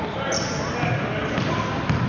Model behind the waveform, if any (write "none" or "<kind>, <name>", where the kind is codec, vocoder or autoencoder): none